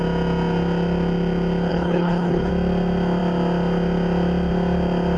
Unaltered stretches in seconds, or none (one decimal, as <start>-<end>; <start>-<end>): 0.0-1.7; 2.5-5.2